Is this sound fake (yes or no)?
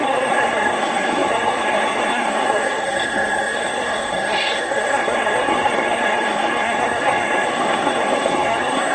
yes